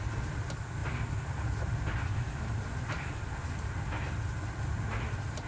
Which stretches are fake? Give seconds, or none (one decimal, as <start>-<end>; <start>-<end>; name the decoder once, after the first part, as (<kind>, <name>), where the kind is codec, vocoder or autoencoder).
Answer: none